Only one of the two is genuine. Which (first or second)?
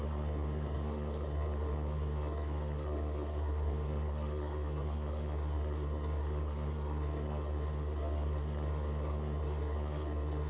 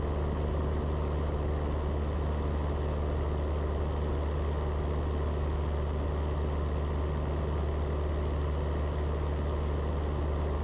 second